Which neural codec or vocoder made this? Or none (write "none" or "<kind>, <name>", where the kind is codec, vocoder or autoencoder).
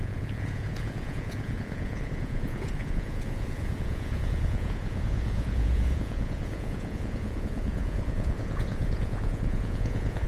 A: vocoder, Vocos